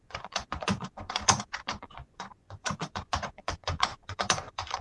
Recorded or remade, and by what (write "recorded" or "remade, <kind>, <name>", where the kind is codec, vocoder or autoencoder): remade, vocoder, Vocos